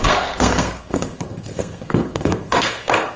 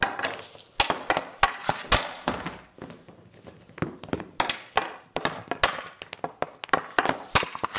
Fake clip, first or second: first